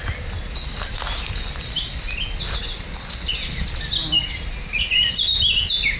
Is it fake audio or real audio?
real